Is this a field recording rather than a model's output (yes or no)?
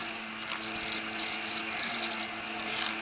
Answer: yes